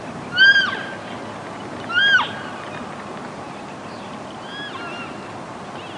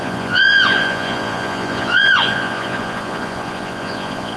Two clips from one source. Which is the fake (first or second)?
second